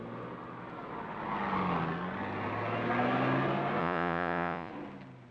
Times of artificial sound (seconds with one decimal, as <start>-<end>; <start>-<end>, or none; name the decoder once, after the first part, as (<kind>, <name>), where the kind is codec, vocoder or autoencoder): 3.8-4.7 (vocoder, Vocos)